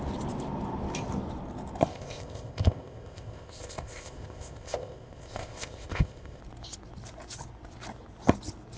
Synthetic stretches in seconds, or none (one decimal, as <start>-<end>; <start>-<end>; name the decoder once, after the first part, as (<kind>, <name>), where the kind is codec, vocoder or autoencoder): 1.9-6.4 (codec, ZipCodec)